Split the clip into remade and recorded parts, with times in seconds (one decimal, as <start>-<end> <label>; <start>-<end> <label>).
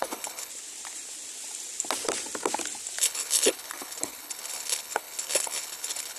0.0-0.5 remade; 0.5-3.0 recorded; 3.0-6.2 remade